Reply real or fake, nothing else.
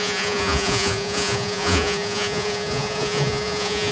fake